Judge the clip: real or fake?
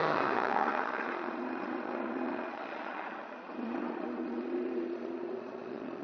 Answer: fake